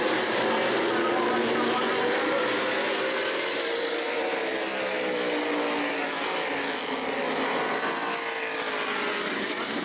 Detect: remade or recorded recorded